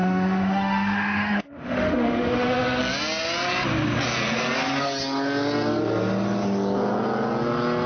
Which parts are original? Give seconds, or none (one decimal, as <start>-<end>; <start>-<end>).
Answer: 2.8-7.9